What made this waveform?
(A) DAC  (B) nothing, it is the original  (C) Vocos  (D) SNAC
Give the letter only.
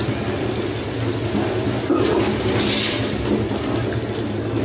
B